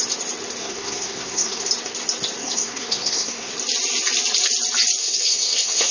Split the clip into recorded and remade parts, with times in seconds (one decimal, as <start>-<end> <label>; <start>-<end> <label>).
0.0-0.6 recorded; 0.6-1.7 remade; 1.7-2.4 recorded; 2.4-3.5 remade; 3.5-5.0 recorded; 5.0-5.9 remade